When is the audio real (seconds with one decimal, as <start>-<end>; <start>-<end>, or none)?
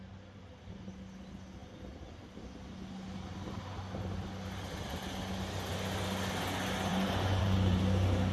0.0-6.9; 7.8-8.3